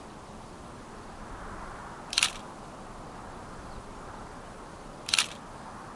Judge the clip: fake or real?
real